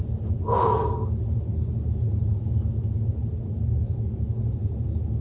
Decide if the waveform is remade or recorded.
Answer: recorded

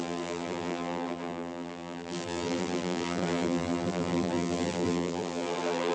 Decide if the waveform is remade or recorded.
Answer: remade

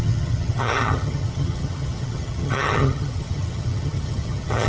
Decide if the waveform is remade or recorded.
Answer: remade